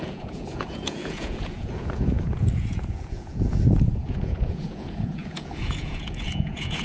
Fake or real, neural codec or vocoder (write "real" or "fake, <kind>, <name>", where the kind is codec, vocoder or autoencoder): fake, vocoder, Vocos